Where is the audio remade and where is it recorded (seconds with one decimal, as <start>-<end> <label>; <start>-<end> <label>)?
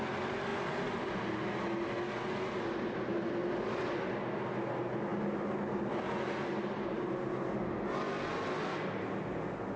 0.0-9.8 recorded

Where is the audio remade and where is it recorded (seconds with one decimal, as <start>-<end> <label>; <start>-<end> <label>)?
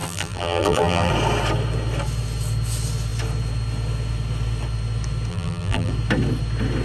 0.0-1.1 remade; 1.1-5.3 recorded; 5.3-5.9 remade; 5.9-6.8 recorded